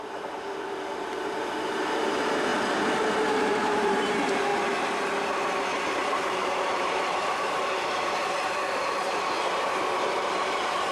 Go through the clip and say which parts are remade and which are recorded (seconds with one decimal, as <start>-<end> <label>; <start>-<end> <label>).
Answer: 0.0-2.5 remade; 2.5-3.3 recorded; 3.3-4.5 remade; 4.5-5.9 recorded; 5.9-10.9 remade